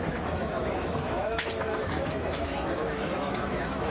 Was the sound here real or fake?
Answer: fake